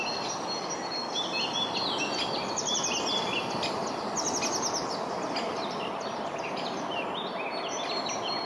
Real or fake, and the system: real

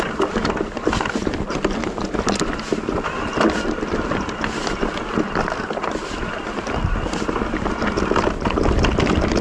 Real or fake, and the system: real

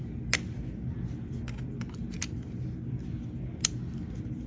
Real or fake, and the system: real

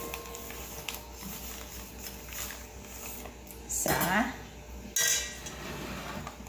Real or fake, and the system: real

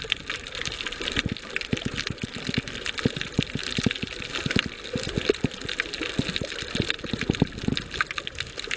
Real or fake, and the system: real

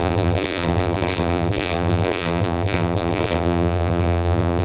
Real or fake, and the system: fake, vocoder, BigVGAN v2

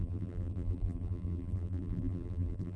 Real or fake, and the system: fake, vocoder, BigVGAN v2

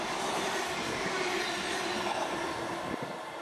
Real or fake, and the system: real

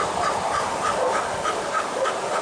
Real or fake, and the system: real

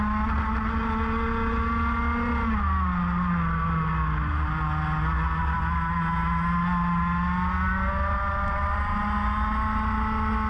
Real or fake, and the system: real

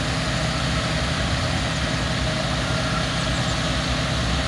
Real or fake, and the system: real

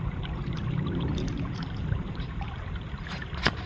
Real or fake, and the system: fake, vocoder, BigVGAN v2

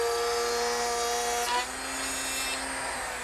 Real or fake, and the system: real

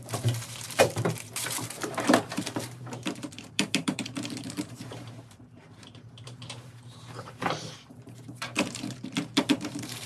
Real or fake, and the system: fake, vocoder, BigVGAN v2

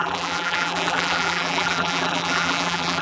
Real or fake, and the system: fake, vocoder, BigVGAN v2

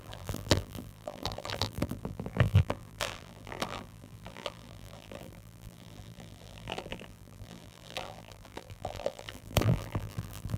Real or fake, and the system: fake, vocoder, BigVGAN v2